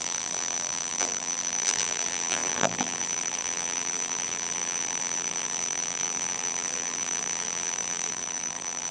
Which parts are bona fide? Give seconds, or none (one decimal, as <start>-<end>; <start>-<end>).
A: none